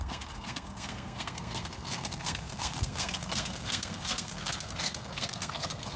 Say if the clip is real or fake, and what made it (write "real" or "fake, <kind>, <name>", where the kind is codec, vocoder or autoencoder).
fake, codec, SNAC